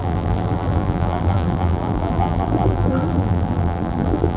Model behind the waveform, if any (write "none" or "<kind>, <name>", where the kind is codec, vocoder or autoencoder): vocoder, BigVGAN v2